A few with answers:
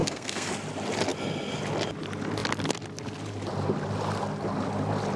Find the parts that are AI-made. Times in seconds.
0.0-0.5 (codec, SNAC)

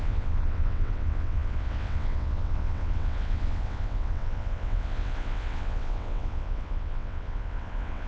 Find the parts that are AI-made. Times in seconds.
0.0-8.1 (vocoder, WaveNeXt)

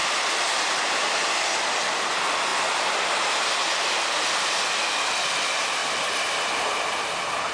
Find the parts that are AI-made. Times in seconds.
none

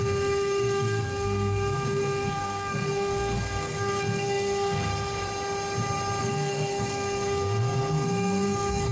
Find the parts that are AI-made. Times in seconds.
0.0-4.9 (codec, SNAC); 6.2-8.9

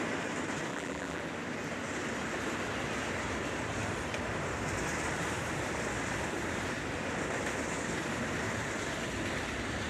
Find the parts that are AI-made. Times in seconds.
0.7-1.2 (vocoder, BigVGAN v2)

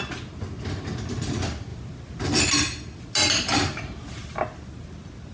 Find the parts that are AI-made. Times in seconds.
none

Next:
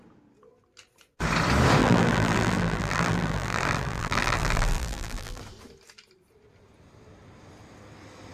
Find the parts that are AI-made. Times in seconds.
1.8-5.4 (vocoder, BigVGAN v2)